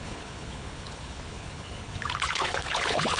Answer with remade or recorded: remade